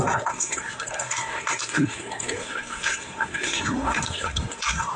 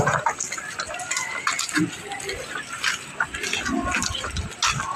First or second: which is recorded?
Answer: second